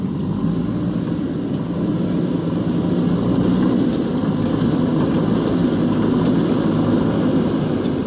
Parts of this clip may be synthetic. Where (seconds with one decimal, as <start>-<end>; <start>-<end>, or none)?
none